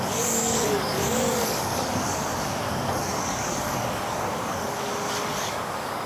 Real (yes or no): no